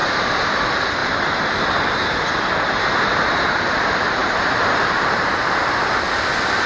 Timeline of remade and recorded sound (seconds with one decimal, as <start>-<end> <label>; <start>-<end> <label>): 0.0-0.6 remade; 0.6-1.0 recorded; 1.0-3.8 remade; 3.8-4.2 recorded; 4.2-6.2 remade; 6.2-6.7 recorded

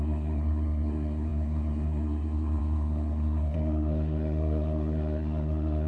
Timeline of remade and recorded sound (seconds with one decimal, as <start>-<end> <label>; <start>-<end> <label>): 0.0-5.9 remade

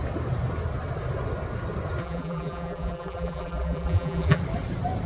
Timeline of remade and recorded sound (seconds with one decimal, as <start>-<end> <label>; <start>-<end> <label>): 0.0-2.0 recorded; 2.0-4.4 remade; 4.4-5.1 recorded

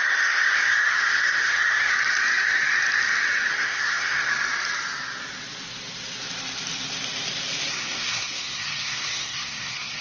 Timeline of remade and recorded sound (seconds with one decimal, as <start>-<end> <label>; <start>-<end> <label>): 0.0-1.9 remade; 1.9-3.5 recorded; 3.5-4.3 remade; 4.3-7.7 recorded; 7.7-10.0 remade

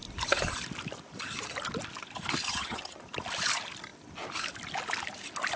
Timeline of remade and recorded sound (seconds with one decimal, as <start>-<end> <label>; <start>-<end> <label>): 0.0-2.5 recorded; 2.5-3.0 remade; 3.0-5.6 recorded

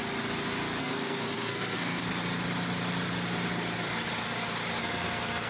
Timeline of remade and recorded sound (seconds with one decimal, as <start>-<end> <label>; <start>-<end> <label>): 0.0-0.8 recorded; 0.8-2.1 remade; 2.1-4.8 recorded; 4.8-5.5 remade